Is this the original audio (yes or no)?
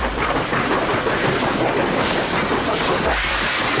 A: no